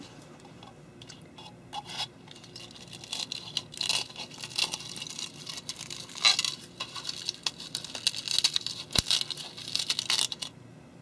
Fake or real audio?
real